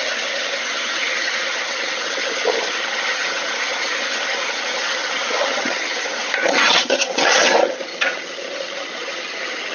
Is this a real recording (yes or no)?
no